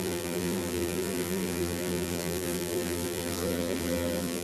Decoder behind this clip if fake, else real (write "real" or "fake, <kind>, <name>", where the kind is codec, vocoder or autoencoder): fake, vocoder, BigVGAN v2